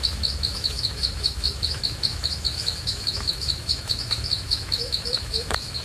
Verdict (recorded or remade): remade